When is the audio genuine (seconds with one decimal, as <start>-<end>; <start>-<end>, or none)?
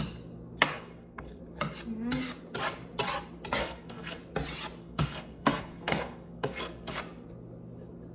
0.0-0.7; 1.4-3.6; 4.2-4.8; 7.0-8.1